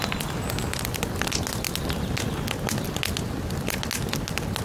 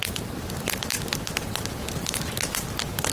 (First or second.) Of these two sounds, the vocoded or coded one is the second